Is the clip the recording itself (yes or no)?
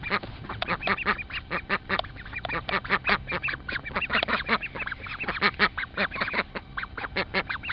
yes